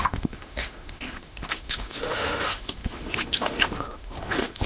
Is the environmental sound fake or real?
fake